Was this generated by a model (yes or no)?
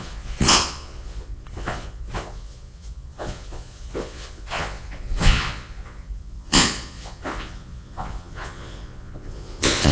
yes